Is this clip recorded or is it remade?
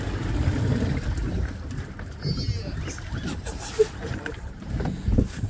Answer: recorded